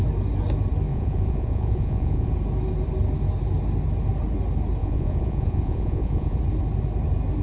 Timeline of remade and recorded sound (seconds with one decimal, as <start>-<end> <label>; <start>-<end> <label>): 0.0-0.9 recorded; 0.9-2.3 remade; 2.3-4.8 recorded; 4.8-6.4 remade; 6.4-7.4 recorded